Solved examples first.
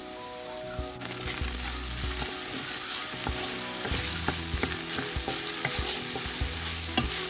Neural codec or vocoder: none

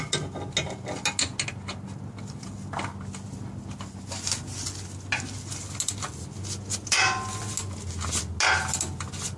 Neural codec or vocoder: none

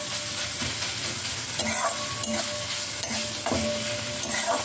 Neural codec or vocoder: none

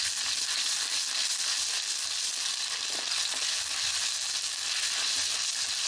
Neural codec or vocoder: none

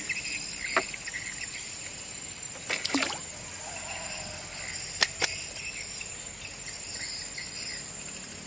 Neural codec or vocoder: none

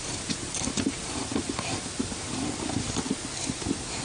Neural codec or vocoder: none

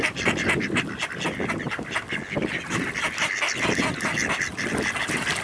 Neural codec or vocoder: none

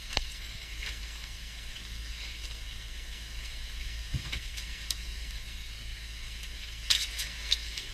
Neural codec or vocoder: codec, SNAC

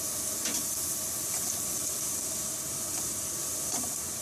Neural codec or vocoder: none